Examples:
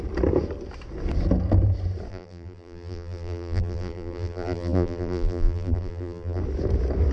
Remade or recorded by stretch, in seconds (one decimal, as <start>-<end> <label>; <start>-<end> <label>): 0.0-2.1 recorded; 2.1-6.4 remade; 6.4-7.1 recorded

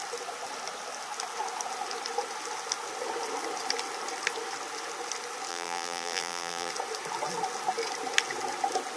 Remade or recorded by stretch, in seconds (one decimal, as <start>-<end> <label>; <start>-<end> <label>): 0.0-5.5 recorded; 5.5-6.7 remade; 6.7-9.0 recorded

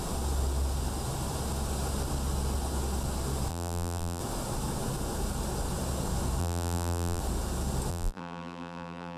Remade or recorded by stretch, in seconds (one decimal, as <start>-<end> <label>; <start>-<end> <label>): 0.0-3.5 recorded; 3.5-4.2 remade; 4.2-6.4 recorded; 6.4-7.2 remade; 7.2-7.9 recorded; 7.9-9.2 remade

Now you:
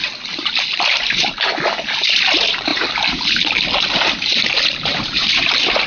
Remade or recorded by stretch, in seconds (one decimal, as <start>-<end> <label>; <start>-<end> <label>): 0.0-2.0 recorded; 2.0-2.7 remade; 2.7-4.3 recorded; 4.3-5.9 remade

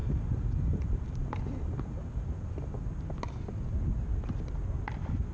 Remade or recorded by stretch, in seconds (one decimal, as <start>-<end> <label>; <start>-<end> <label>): 0.0-2.9 remade; 2.9-5.3 recorded

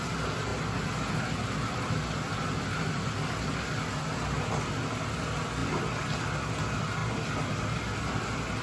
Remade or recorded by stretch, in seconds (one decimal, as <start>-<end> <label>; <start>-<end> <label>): 0.0-8.6 recorded